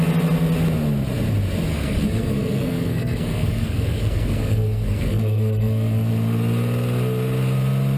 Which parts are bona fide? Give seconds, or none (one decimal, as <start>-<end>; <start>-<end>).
0.0-1.7; 6.1-8.0